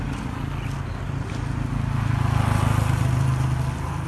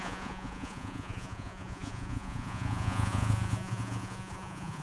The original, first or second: first